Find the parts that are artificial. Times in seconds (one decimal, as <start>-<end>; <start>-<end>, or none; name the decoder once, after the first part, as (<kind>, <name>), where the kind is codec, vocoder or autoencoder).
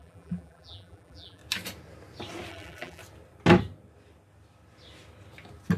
0.0-1.4 (vocoder, BigVGAN v2); 2.5-3.0